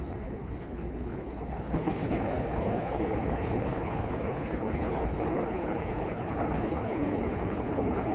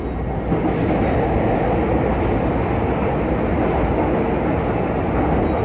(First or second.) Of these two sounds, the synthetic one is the first